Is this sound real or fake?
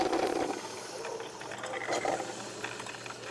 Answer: real